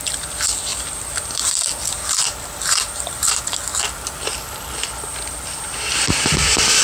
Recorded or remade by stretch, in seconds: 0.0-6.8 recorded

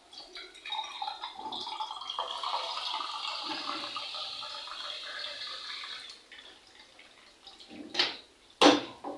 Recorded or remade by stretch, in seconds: 0.0-9.2 recorded

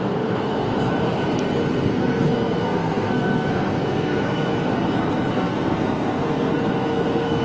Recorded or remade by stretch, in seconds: 0.0-0.7 remade; 0.7-1.8 recorded; 1.8-4.5 remade; 4.5-5.3 recorded; 5.3-7.4 remade

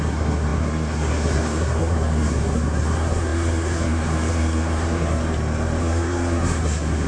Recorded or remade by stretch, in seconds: 0.0-5.2 remade; 5.2-5.8 recorded; 5.8-7.1 remade